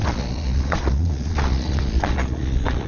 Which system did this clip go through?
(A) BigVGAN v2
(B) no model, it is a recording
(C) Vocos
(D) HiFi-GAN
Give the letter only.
C